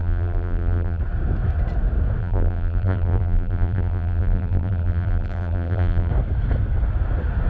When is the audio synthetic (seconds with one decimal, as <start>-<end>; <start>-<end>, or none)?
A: 0.0-1.0; 2.2-6.1